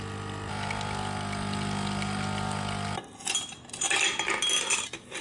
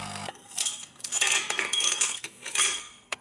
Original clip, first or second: first